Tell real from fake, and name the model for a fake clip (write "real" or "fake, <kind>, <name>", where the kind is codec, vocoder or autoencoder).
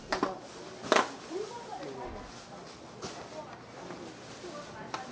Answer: real